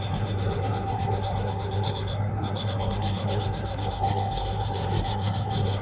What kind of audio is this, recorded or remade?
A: remade